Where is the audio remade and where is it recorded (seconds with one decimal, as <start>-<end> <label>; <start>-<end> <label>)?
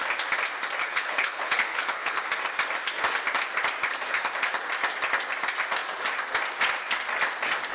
0.0-0.8 recorded; 0.8-2.2 remade; 2.2-7.7 recorded